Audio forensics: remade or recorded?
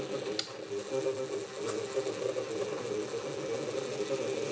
recorded